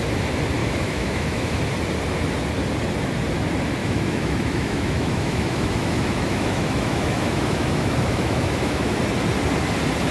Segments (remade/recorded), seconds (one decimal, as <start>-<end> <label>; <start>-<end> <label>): 0.0-0.6 recorded; 0.6-1.6 remade; 1.6-3.8 recorded; 3.8-9.0 remade; 9.0-10.1 recorded

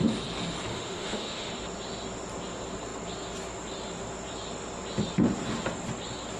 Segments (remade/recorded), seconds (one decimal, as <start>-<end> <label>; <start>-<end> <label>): 0.0-0.7 recorded; 0.7-1.5 remade; 1.5-6.4 recorded